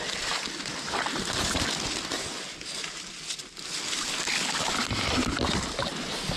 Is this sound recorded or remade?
recorded